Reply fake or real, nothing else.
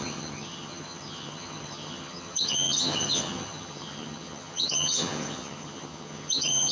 fake